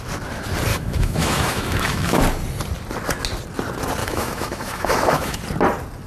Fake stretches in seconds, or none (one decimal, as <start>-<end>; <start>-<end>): 0.7-2.2; 4.0-5.4